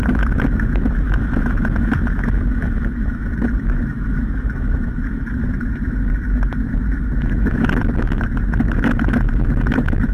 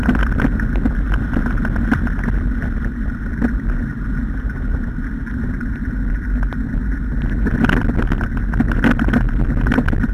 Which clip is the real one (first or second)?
second